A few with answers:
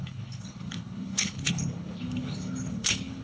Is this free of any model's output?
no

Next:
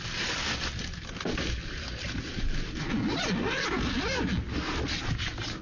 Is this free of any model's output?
yes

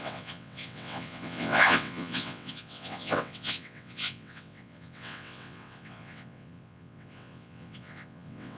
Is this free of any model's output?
no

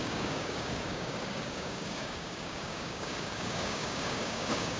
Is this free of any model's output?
no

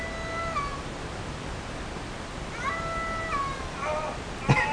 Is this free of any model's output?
yes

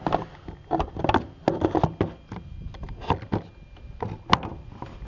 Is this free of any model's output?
yes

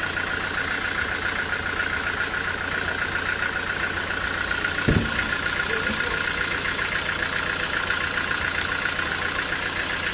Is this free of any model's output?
yes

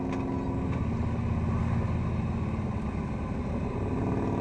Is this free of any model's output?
yes